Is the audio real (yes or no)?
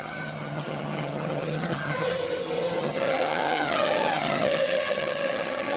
no